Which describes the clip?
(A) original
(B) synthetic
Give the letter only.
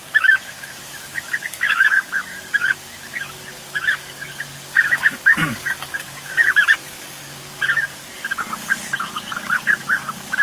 B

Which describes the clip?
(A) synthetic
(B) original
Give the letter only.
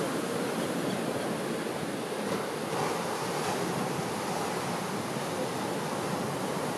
B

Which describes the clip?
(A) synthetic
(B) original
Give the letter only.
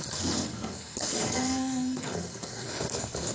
A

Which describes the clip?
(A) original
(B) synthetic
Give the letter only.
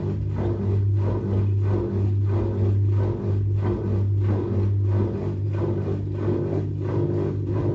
A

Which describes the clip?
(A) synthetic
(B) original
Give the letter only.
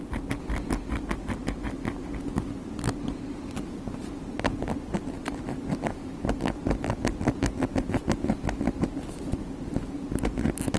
B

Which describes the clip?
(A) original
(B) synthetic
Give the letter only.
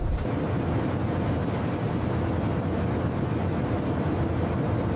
A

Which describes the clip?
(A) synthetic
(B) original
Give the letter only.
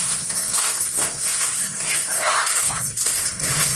A